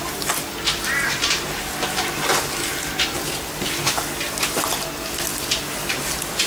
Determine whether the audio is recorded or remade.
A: recorded